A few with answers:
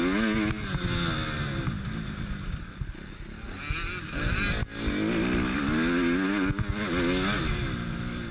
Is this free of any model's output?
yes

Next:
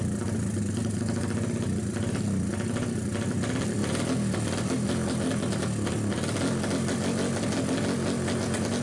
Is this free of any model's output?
yes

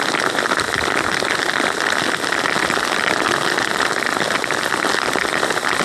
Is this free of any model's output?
yes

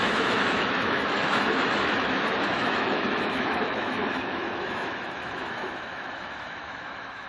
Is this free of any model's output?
no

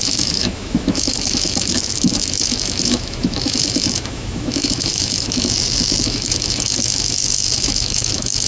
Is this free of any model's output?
no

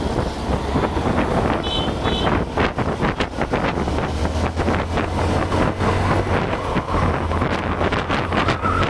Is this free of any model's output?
yes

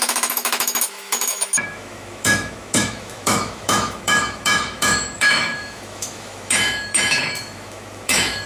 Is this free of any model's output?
no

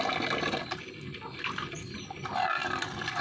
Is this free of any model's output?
yes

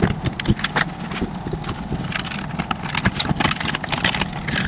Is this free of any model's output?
yes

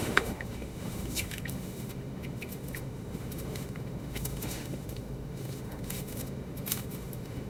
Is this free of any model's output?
no